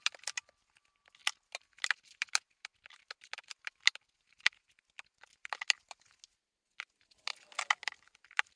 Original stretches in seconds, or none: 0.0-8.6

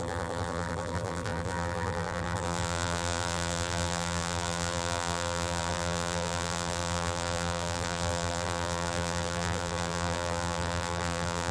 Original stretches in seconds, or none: none

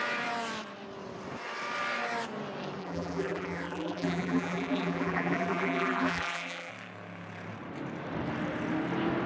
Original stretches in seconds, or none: 0.0-2.8; 6.7-9.3

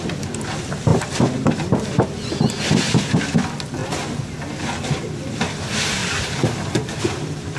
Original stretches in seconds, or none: 0.0-0.9; 3.0-6.0

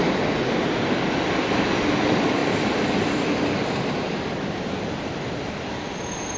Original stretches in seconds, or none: 0.0-6.4